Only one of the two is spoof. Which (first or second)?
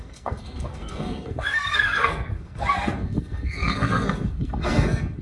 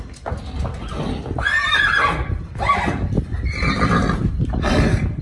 first